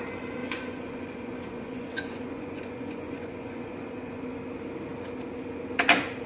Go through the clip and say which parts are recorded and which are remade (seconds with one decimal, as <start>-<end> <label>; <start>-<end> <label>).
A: 0.0-0.4 recorded; 0.4-4.2 remade; 4.2-6.3 recorded